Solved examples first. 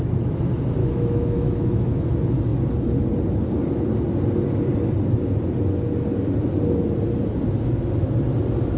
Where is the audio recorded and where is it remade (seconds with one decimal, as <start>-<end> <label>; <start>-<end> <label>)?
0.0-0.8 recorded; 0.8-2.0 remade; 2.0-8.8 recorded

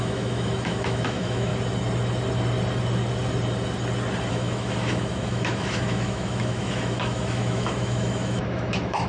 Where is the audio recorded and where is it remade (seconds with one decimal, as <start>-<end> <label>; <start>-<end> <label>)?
0.0-1.5 remade; 1.5-4.3 recorded; 4.3-9.1 remade

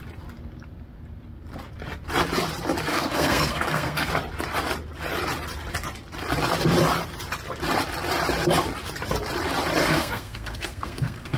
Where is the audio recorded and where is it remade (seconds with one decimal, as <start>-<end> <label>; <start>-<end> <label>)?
0.0-2.9 recorded; 2.9-4.1 remade; 4.1-9.8 recorded; 9.8-11.4 remade

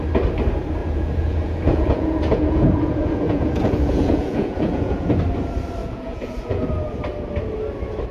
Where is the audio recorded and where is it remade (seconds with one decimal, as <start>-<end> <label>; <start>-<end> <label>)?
0.0-0.8 recorded; 0.8-5.2 remade; 5.2-5.8 recorded; 5.8-6.7 remade; 6.7-8.1 recorded

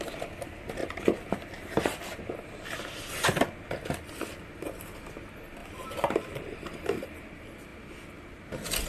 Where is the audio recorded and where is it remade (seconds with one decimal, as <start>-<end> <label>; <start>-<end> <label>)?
0.0-0.8 recorded; 0.8-2.2 remade; 2.2-5.6 recorded; 5.6-7.0 remade; 7.0-8.9 recorded

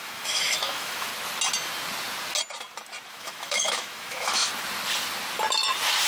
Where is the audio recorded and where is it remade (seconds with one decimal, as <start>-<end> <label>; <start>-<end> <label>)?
0.0-1.1 remade; 1.1-3.1 recorded; 3.1-4.5 remade; 4.5-6.1 recorded

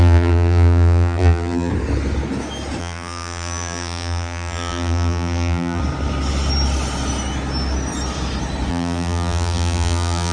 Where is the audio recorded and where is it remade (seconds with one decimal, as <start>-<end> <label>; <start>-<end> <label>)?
0.0-1.7 remade; 1.7-2.8 recorded; 2.8-5.8 remade; 5.8-8.7 recorded; 8.7-10.3 remade

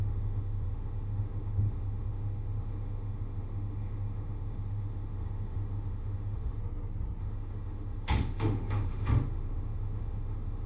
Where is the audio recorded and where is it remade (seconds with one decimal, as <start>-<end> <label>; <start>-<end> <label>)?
0.0-6.6 remade; 6.6-7.2 recorded; 7.2-10.7 remade